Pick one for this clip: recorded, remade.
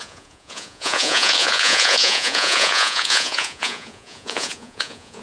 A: remade